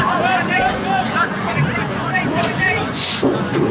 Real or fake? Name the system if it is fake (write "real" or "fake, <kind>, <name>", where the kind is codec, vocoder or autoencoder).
fake, vocoder, Vocos